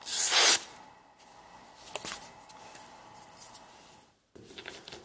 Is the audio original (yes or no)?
yes